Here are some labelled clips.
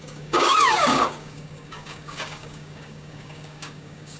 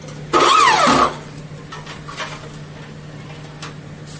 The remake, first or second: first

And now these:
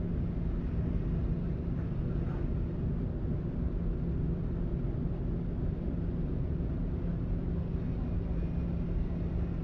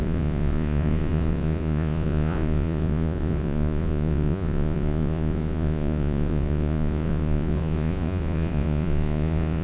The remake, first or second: second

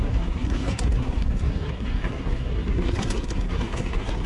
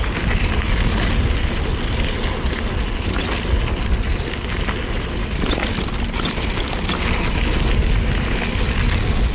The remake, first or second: first